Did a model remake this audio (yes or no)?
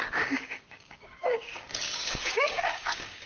yes